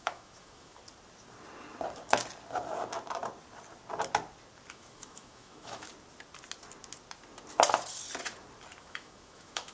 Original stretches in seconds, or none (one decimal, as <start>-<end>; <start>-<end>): 0.8-4.7; 5.9-8.8